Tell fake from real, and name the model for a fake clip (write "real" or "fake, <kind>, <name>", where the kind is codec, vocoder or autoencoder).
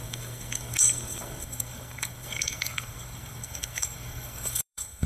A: fake, codec, SNAC